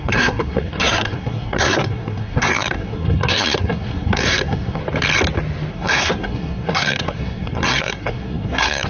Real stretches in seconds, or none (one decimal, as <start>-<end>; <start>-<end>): 4.8-5.7

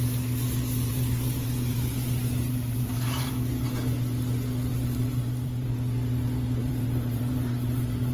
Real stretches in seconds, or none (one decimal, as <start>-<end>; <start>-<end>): 0.0-0.9; 3.3-4.7; 5.7-6.6

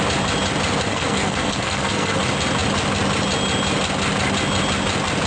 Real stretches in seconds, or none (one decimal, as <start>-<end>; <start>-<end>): 0.0-0.9; 2.2-5.3

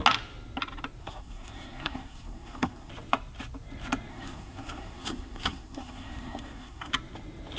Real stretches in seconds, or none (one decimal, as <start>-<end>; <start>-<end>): 0.0-1.0; 2.9-4.1; 6.9-7.6

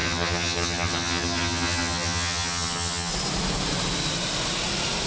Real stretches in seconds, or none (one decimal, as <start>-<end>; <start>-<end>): 3.1-5.1